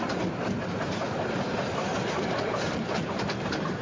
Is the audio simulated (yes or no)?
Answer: yes